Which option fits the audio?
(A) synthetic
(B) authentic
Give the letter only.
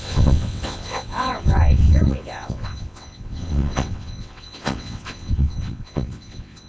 A